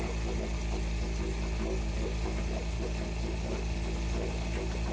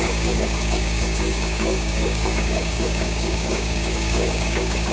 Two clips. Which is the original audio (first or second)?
first